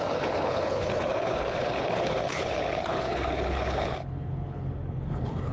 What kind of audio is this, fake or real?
fake